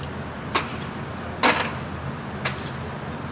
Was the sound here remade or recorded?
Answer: recorded